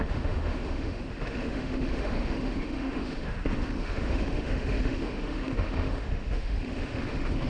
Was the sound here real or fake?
fake